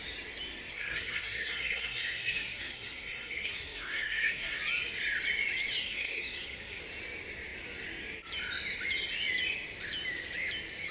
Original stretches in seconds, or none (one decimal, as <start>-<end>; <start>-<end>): 0.0-0.7; 4.6-5.8; 6.8-10.9